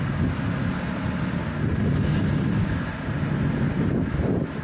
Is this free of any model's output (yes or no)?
yes